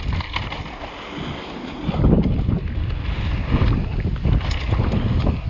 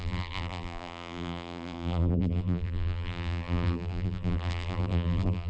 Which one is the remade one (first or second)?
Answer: second